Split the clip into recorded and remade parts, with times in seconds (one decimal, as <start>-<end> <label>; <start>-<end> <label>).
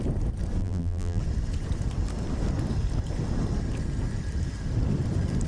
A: 0.0-0.6 recorded; 0.6-1.2 remade; 1.2-5.5 recorded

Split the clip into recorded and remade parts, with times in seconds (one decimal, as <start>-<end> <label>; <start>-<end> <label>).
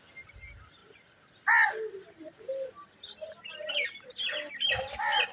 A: 0.0-5.3 recorded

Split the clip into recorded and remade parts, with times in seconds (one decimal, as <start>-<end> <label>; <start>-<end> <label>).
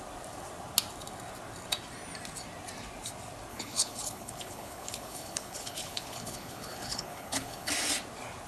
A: 0.0-3.5 recorded; 3.5-7.7 remade; 7.7-8.5 recorded